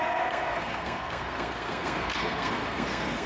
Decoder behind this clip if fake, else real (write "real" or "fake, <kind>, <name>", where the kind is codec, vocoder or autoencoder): fake, codec, SNAC